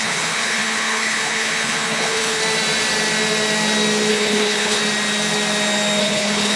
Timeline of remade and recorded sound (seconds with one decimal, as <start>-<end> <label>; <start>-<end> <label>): 0.0-2.4 remade; 2.4-4.1 recorded; 4.1-4.8 remade; 4.8-6.0 recorded; 6.0-6.6 remade